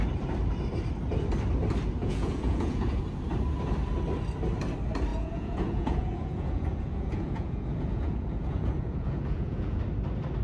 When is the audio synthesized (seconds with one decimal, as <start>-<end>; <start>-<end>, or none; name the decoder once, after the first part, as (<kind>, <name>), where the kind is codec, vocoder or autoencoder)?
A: 2.0-3.0 (vocoder, Vocos); 5.1-9.8